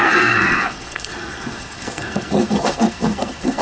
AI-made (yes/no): yes